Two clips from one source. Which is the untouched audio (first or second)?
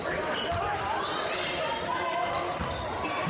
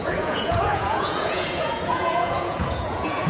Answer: first